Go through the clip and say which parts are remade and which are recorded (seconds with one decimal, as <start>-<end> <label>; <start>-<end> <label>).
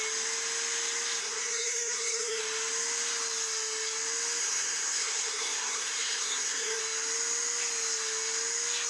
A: 0.0-1.2 recorded; 1.2-2.4 remade; 2.4-4.4 recorded; 4.4-6.8 remade; 6.8-8.9 recorded